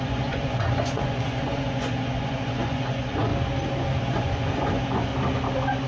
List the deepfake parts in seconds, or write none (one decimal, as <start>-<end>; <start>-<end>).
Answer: 0.0-3.3; 4.0-5.1